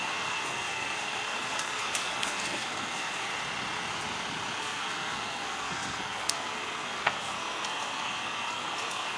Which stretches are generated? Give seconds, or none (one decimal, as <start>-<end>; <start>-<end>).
0.0-3.3; 4.6-9.2